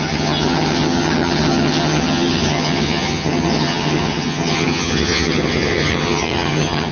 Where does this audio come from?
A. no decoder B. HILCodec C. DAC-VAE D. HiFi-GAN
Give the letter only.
D